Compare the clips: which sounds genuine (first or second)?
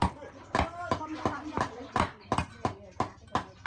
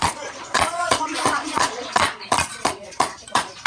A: first